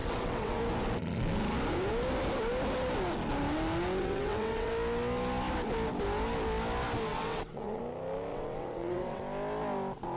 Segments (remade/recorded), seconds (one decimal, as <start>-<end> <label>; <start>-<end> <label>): 0.0-0.6 remade; 0.6-4.0 recorded; 4.0-4.7 remade; 4.7-7.1 recorded; 7.1-7.8 remade; 7.8-8.3 recorded; 8.3-9.2 remade; 9.2-10.2 recorded